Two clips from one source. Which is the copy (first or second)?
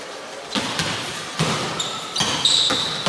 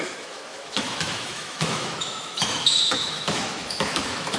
second